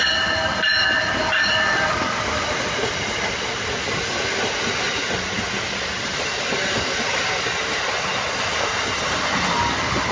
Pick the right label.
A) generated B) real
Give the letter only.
B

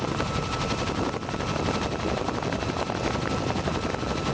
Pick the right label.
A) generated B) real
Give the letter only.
B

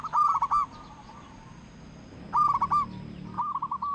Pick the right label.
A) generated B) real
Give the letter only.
B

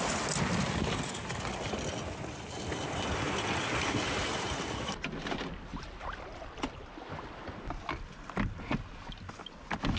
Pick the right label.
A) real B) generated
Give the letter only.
A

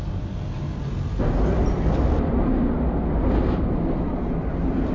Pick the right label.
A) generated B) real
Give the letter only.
B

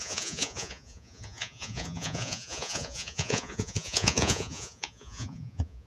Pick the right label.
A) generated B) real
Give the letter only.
A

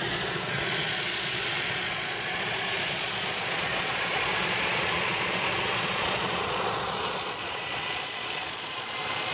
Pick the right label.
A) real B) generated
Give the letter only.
B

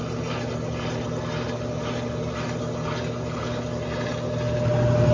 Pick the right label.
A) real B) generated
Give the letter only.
A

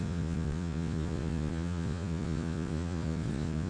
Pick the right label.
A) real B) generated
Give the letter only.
B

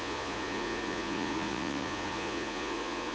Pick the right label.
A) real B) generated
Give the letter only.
B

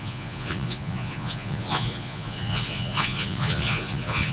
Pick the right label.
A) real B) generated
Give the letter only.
B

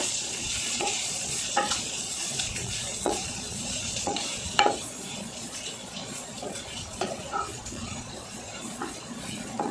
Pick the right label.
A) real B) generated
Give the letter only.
B